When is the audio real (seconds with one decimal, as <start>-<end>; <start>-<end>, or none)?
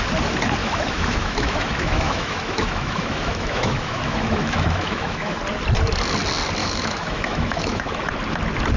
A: 0.0-0.6; 5.4-6.6; 8.1-8.8